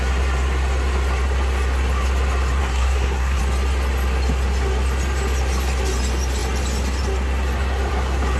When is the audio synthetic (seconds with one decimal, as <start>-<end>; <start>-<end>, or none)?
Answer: 2.6-3.4